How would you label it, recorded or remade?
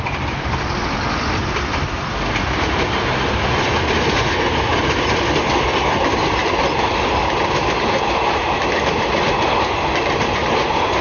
remade